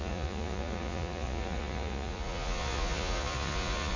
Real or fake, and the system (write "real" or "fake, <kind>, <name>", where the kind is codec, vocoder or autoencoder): fake, vocoder, Vocos